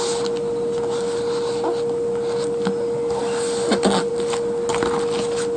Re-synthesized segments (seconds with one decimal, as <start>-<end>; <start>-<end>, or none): none